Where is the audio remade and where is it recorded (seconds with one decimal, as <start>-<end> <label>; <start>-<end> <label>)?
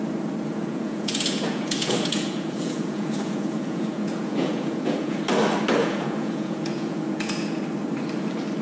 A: 0.0-0.6 recorded; 0.6-5.2 remade; 5.2-5.8 recorded; 5.8-7.6 remade; 7.6-8.6 recorded